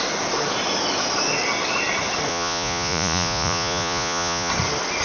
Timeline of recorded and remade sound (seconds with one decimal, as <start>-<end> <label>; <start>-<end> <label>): 0.0-2.3 recorded; 2.3-4.5 remade; 4.5-5.0 recorded